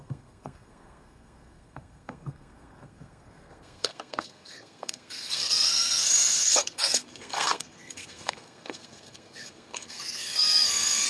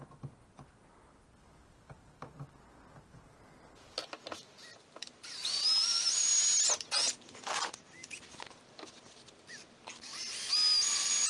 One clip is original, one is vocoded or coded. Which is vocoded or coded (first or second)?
first